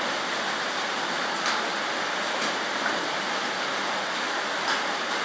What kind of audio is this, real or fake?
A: real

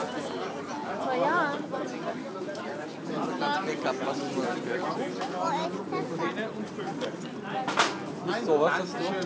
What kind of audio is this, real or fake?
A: real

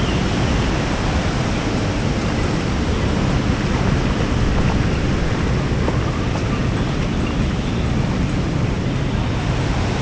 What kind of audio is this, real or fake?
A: real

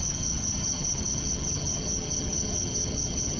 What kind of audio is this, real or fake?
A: fake